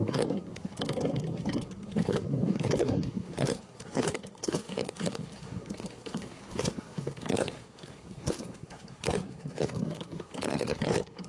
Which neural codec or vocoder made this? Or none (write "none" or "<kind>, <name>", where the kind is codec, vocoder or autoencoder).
codec, SNAC